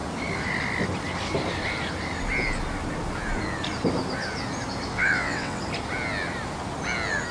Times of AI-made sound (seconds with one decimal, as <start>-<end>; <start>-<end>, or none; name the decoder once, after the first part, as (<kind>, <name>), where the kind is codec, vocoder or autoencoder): 4.9-5.6 (vocoder, WaveNeXt)